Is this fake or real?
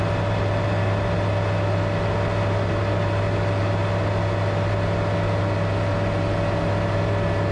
real